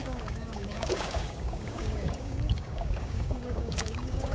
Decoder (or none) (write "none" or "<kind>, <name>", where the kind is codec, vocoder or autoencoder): codec, DAC